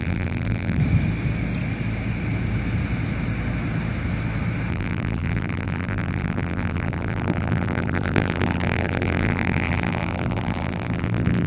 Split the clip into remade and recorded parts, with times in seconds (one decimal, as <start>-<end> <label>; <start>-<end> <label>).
0.0-0.8 remade; 0.8-4.7 recorded; 4.7-11.5 remade